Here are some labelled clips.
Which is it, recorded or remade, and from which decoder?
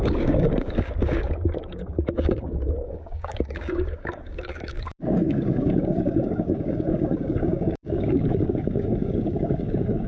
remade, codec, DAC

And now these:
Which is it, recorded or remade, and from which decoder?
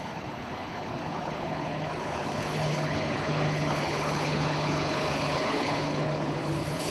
remade, codec, HILCodec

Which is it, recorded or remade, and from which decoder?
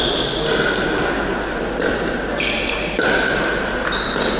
recorded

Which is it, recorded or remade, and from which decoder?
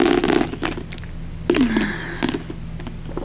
recorded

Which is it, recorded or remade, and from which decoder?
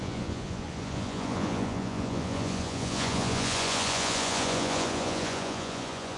remade, vocoder, Vocos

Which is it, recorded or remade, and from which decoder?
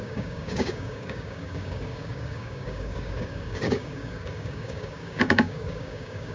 remade, codec, DAC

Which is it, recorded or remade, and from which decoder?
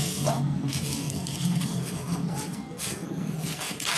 remade, codec, SNAC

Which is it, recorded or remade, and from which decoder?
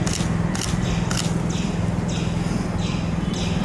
recorded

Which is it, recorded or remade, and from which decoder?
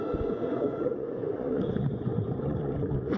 remade, vocoder, Vocos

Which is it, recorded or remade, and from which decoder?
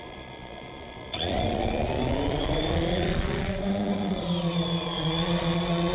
remade, vocoder, Vocos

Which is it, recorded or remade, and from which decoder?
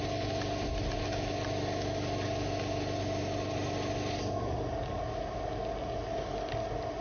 recorded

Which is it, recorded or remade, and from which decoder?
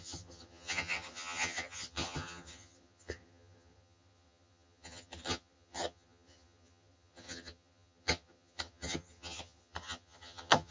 remade, vocoder, HiFi-GAN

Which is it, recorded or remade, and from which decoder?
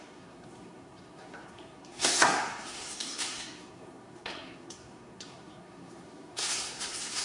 remade, codec, SNAC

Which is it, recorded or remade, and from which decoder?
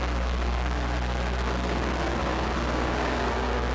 remade, codec, SNAC